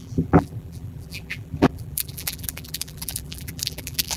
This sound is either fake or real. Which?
fake